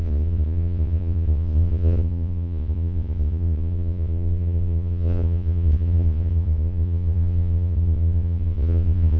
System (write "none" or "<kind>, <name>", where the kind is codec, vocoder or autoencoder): vocoder, Vocos